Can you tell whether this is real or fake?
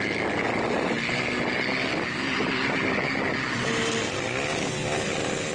real